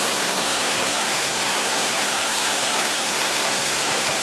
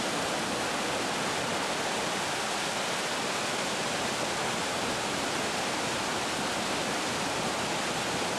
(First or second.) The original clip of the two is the second